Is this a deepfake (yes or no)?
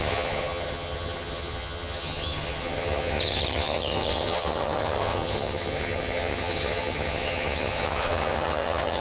yes